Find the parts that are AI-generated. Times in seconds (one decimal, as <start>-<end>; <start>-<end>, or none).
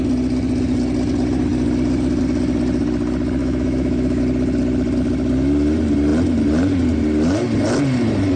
3.4-4.2